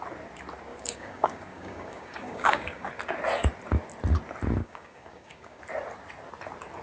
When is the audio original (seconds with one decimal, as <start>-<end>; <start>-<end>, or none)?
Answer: 0.0-0.7; 2.9-4.6; 5.6-6.8